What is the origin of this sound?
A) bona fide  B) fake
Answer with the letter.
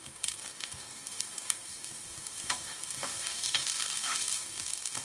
B